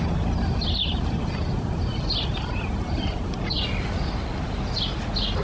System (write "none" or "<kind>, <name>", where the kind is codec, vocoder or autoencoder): none